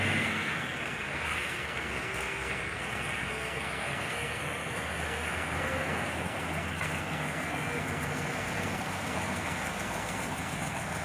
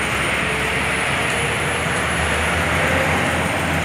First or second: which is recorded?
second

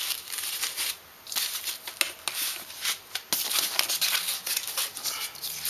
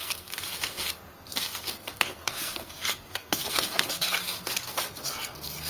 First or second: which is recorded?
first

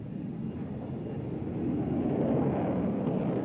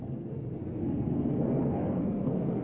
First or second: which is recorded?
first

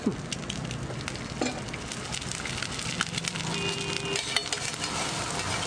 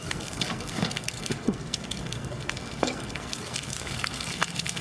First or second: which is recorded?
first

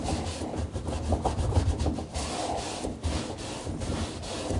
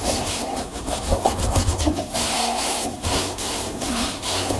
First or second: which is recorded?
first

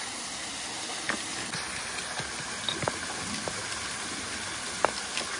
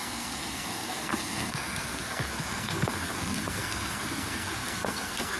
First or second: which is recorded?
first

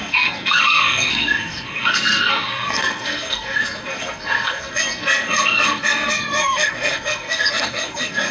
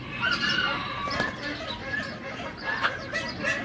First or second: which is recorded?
second